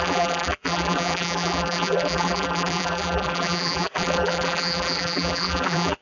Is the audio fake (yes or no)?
yes